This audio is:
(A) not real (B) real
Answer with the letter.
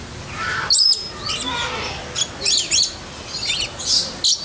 B